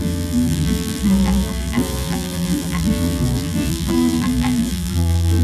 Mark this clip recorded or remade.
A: remade